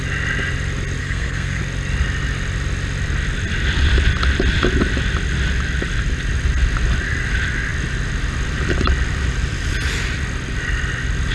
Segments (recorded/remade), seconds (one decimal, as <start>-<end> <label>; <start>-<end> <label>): 0.0-1.0 recorded; 1.0-1.6 remade; 1.6-11.3 recorded